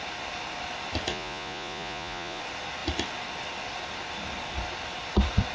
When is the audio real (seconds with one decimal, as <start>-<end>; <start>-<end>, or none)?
0.0-1.1; 2.4-5.5